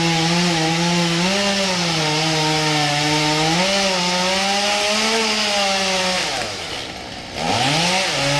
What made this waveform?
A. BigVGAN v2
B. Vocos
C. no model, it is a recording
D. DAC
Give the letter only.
C